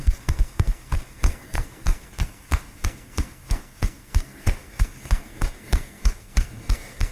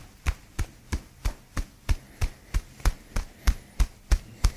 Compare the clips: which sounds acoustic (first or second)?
second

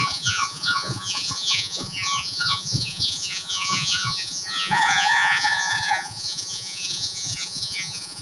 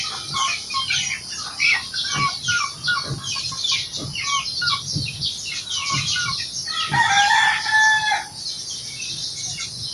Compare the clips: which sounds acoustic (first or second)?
second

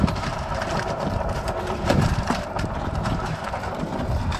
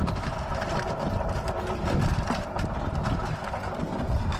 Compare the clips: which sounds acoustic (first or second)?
second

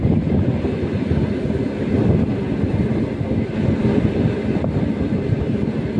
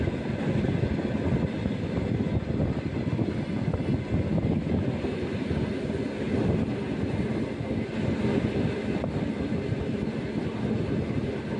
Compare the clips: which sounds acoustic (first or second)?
second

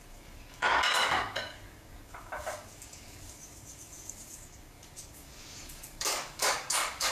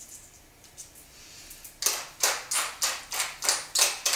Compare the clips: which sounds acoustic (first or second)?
second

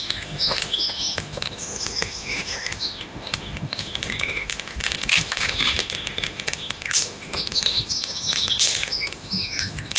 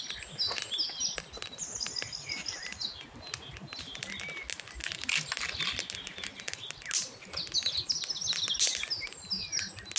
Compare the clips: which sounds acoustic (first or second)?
second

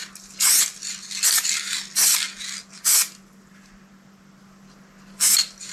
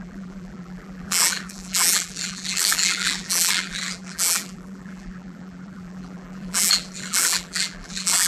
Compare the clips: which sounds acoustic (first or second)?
first